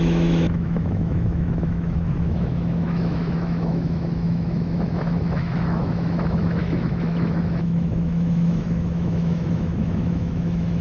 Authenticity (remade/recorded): remade